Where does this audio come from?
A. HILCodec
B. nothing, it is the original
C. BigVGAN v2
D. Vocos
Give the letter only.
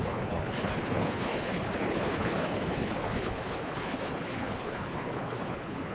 A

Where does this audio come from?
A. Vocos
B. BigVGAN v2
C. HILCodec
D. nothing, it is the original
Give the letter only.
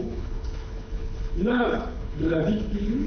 C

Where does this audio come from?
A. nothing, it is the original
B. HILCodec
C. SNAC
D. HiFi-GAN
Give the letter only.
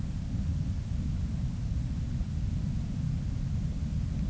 A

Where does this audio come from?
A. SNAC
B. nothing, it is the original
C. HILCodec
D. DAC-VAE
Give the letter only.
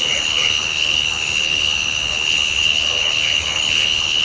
C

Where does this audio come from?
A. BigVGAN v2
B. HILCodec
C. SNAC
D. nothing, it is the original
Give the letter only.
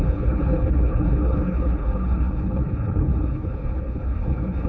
B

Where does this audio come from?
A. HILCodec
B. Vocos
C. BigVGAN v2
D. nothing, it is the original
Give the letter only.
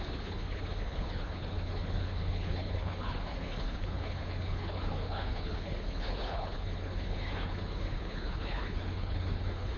A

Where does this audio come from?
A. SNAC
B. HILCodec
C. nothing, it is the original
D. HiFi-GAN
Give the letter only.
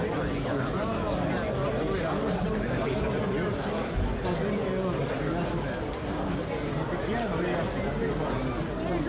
C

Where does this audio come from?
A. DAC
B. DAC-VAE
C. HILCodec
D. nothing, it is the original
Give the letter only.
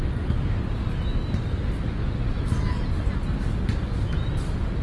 D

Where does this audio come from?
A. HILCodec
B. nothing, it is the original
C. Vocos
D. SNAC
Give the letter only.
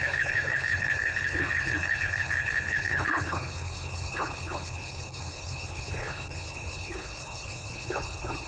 A